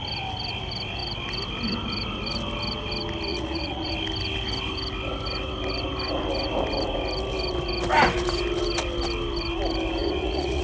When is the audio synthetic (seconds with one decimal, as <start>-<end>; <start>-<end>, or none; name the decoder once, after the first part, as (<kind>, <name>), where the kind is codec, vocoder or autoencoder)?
3.3-3.9 (vocoder, Vocos); 10.0-10.6